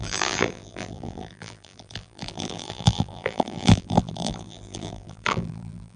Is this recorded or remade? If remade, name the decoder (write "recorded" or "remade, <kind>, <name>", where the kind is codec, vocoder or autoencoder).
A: remade, vocoder, BigVGAN v2